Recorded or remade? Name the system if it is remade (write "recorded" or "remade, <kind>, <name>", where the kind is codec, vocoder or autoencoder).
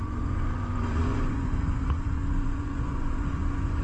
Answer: remade, vocoder, Vocos